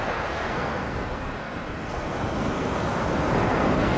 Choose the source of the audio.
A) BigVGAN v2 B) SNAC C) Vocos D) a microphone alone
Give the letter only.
B